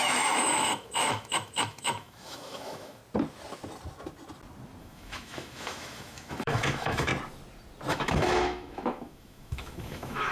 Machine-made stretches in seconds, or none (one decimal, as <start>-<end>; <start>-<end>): 0.0-3.0; 4.8-7.1; 7.9-10.3